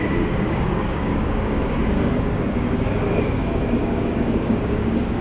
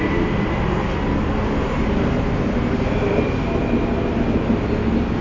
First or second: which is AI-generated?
first